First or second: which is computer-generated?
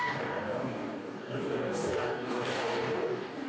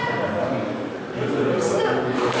first